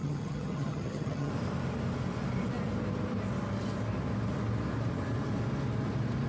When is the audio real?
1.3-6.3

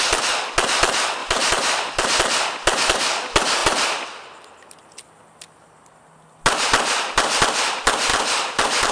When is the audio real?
0.0-1.2; 2.2-8.1